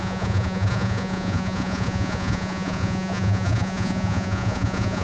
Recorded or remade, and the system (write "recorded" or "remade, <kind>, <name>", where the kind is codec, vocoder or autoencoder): remade, vocoder, Vocos